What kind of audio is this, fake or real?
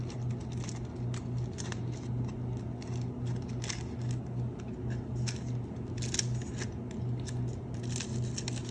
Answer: real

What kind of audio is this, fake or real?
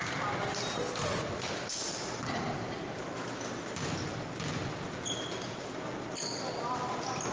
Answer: real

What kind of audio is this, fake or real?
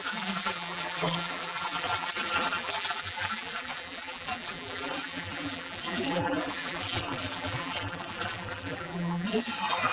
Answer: fake